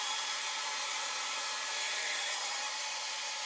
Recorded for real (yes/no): no